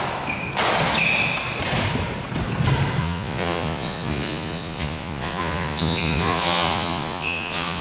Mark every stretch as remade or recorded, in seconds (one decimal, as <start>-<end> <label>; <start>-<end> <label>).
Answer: 0.0-3.0 recorded; 3.0-7.8 remade